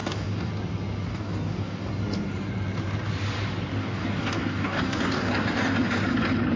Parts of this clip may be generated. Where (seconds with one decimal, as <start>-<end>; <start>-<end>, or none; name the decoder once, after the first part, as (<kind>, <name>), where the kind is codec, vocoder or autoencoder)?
0.0-0.5 (codec, DAC); 1.1-1.9; 3.8-5.3